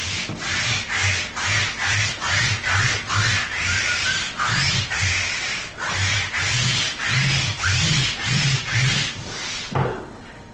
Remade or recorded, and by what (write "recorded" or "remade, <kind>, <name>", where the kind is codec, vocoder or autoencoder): recorded